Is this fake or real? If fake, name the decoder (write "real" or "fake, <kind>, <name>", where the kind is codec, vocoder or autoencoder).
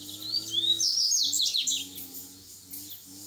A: real